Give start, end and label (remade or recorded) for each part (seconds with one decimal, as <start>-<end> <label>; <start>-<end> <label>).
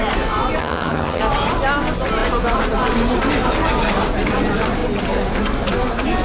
0.0-0.6 recorded; 0.6-1.2 remade; 1.2-6.2 recorded